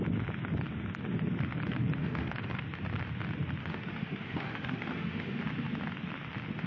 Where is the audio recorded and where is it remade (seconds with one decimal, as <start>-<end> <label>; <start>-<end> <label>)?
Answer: 0.0-2.0 recorded; 2.0-2.6 remade; 2.6-3.6 recorded; 3.6-5.4 remade; 5.4-6.7 recorded